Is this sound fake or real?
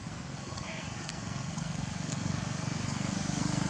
fake